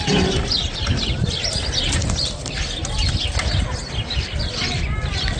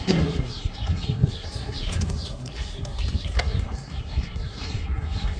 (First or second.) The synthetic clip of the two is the second